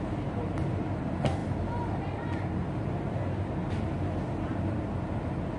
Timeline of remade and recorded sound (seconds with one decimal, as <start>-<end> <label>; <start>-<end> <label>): 0.0-5.6 recorded